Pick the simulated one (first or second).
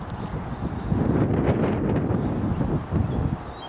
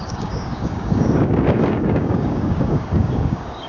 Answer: second